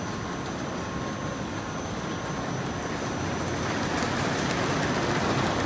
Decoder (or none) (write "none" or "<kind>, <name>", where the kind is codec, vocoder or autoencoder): none